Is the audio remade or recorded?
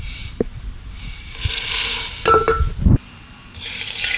remade